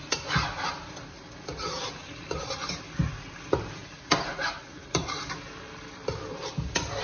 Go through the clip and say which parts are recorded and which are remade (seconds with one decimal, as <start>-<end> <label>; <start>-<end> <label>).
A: 0.0-7.0 recorded